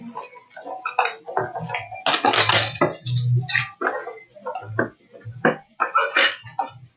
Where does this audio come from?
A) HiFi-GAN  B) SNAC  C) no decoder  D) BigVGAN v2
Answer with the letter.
C